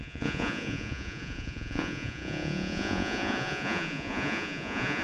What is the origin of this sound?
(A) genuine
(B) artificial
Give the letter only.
B